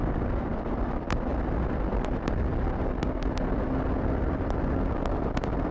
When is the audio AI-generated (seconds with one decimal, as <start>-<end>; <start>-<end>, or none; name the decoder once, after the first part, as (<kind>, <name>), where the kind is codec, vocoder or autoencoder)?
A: none